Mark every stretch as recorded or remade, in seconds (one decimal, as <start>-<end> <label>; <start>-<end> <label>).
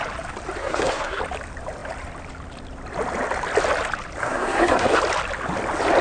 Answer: 0.0-0.6 recorded; 0.6-1.2 remade; 1.2-4.2 recorded; 4.2-5.0 remade; 5.0-6.0 recorded